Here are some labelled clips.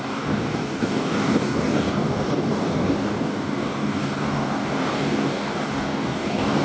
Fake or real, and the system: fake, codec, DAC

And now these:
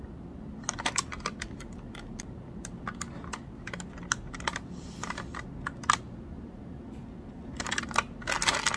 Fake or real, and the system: real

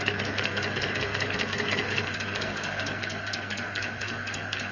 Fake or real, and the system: fake, codec, SNAC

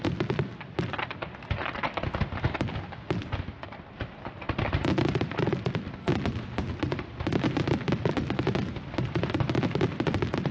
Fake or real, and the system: real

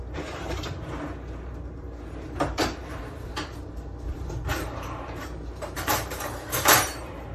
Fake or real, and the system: fake, vocoder, BigVGAN v2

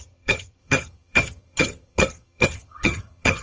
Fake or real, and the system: fake, vocoder, HiFi-GAN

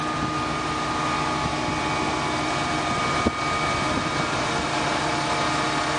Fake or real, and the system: real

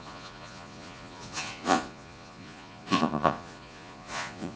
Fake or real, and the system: fake, vocoder, Vocos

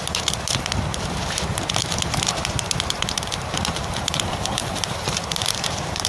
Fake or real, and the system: fake, vocoder, BigVGAN v2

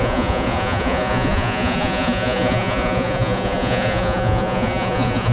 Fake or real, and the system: fake, vocoder, Vocos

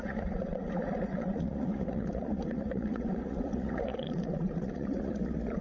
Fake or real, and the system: fake, vocoder, Vocos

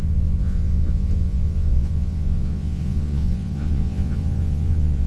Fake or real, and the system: fake, vocoder, Vocos